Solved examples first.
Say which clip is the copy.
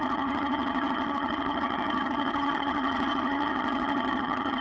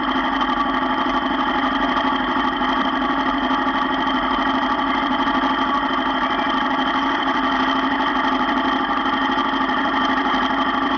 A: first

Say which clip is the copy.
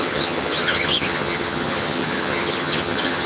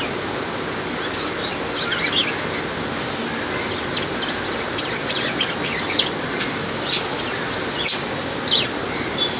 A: first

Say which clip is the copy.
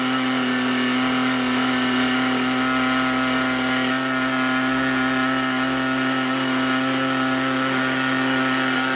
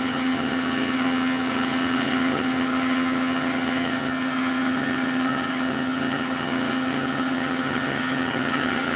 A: second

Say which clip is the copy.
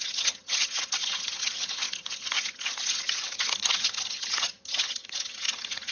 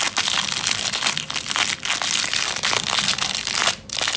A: first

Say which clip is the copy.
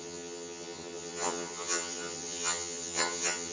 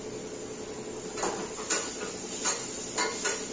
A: first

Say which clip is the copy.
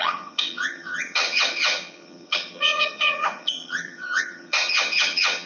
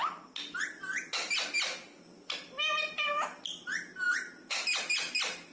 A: first